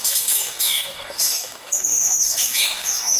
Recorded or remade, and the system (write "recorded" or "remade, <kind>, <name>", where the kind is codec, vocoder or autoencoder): remade, codec, DAC